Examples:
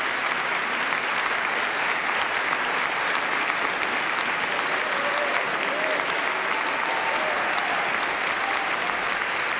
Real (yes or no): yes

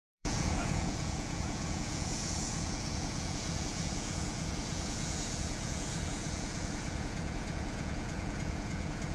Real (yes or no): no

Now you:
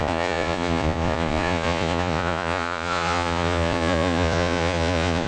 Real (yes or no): no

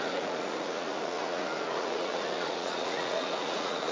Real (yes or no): no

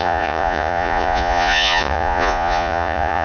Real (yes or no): no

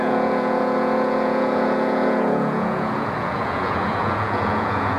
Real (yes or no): no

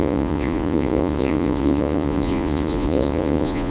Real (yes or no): no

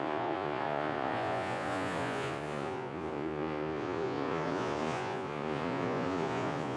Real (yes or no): no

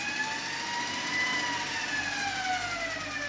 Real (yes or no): yes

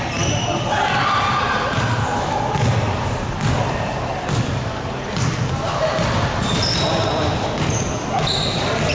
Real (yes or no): yes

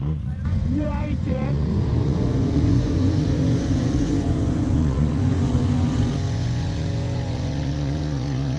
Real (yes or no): no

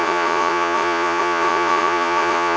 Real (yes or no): no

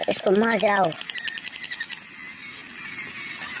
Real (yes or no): yes